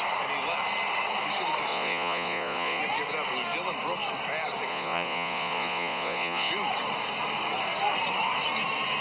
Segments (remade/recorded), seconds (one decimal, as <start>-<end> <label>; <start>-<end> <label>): 0.0-1.7 recorded; 1.7-2.8 remade; 2.8-4.7 recorded; 4.7-6.5 remade; 6.5-9.0 recorded